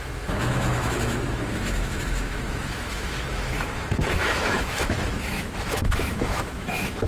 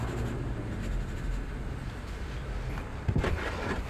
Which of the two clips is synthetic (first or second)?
first